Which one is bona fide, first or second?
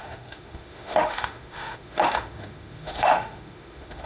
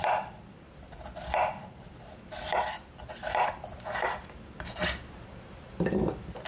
second